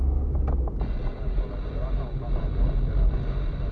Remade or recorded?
recorded